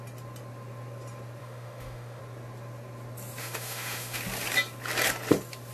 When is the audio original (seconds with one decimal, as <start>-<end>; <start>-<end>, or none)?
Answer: 0.0-1.4; 2.2-3.4; 4.2-5.7